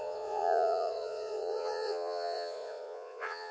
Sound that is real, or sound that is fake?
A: fake